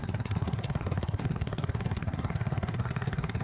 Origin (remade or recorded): remade